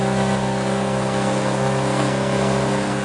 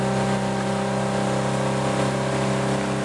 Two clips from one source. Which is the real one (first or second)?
second